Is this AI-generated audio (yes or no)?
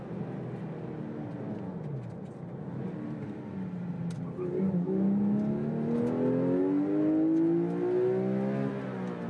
no